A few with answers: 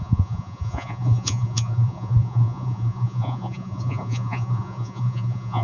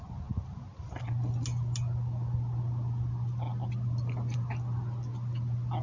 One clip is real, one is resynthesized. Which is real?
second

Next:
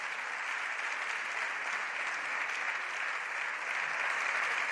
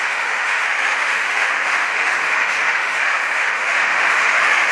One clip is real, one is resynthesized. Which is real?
first